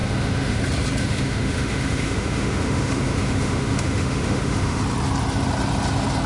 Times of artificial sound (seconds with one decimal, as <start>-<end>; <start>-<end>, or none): 0.0-0.6; 1.0-4.8